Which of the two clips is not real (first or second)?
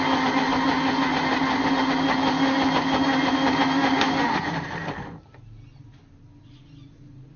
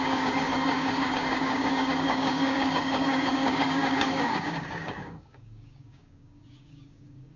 second